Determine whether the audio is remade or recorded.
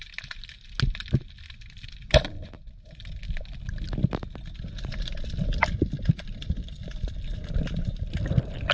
recorded